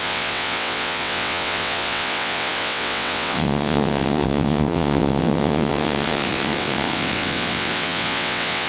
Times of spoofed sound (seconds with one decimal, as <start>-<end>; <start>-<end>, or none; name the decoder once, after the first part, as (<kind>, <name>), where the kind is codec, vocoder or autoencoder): 0.0-8.7 (vocoder, WaveNeXt)